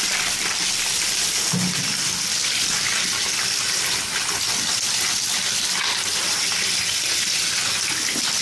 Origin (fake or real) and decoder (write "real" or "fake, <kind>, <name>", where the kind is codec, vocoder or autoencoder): real